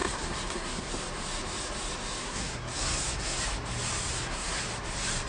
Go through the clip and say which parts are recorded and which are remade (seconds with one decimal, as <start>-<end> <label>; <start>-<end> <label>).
0.0-0.9 remade; 0.9-2.2 recorded; 2.2-3.4 remade; 3.4-4.1 recorded; 4.1-4.6 remade; 4.6-5.3 recorded